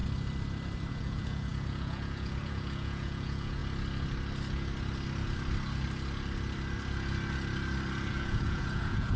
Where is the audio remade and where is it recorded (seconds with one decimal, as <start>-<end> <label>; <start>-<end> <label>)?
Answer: 0.0-0.9 recorded; 0.9-3.6 remade; 3.6-8.1 recorded; 8.1-9.2 remade